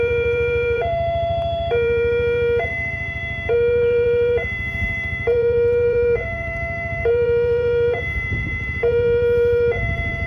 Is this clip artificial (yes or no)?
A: yes